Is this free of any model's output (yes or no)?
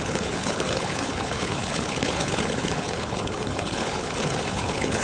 no